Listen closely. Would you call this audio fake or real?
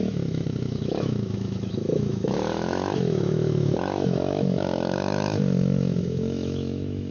fake